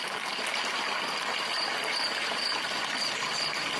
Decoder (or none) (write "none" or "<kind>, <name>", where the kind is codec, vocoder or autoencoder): none